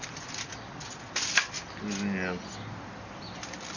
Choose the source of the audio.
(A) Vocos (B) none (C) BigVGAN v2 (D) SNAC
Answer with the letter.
B